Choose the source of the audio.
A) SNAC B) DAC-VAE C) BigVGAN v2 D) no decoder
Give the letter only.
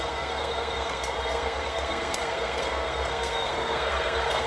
A